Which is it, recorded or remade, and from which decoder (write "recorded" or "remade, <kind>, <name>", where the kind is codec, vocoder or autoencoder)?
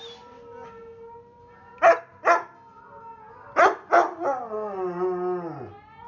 recorded